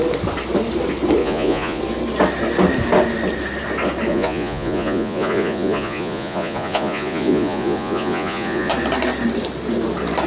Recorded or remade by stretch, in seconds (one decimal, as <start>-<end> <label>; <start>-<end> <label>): 0.0-1.2 recorded; 1.2-1.8 remade; 1.8-4.1 recorded; 4.1-8.7 remade; 8.7-10.3 recorded